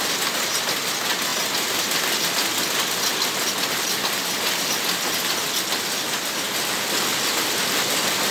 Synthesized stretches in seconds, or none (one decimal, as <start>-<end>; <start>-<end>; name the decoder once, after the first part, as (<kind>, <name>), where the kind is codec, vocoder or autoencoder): 7.1-7.6 (vocoder, BigVGAN v2)